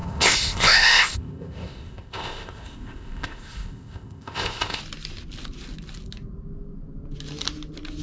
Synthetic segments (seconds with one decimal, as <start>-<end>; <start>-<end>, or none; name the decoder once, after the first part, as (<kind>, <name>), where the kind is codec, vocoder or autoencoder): 0.0-4.8 (codec, ZipCodec)